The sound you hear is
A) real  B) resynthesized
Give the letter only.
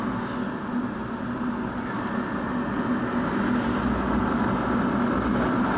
A